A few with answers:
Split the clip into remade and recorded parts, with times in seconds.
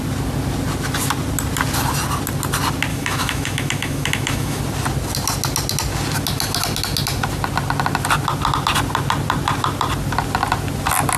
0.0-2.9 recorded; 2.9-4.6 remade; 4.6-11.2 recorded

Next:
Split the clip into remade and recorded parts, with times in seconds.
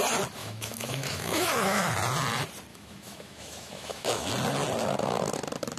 0.0-0.4 recorded; 0.4-1.9 remade; 1.9-2.7 recorded; 2.7-4.3 remade; 4.3-5.8 recorded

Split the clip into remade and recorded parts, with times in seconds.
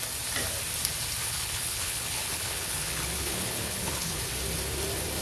0.0-1.2 recorded; 1.2-4.2 remade; 4.2-5.2 recorded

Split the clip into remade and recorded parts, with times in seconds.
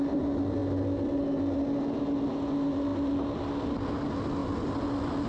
0.0-5.3 recorded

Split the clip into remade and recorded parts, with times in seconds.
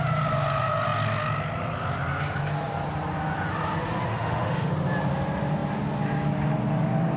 0.0-4.1 recorded; 4.1-4.7 remade; 4.7-7.2 recorded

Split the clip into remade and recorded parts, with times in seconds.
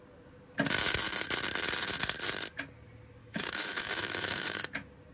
0.0-3.2 recorded; 3.2-4.6 remade; 4.6-5.1 recorded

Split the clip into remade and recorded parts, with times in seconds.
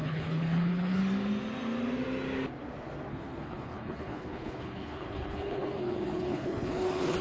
0.0-1.0 remade; 1.0-3.1 recorded; 3.1-7.2 remade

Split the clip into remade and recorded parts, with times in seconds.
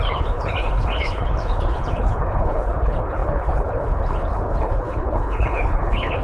0.0-6.2 remade